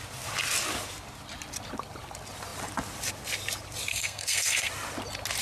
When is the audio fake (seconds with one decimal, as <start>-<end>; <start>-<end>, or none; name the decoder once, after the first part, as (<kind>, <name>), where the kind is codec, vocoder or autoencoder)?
3.9-4.7 (codec, SNAC)